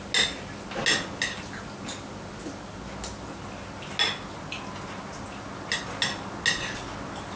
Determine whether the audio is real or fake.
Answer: real